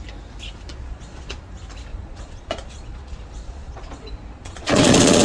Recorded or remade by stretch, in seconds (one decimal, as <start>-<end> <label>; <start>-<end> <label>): 0.0-0.7 recorded; 0.7-1.4 remade; 1.4-1.9 recorded; 1.9-5.2 remade